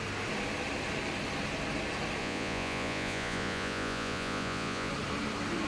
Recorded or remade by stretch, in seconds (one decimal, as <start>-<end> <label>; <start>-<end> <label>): 0.0-2.2 recorded; 2.2-4.9 remade; 4.9-5.7 recorded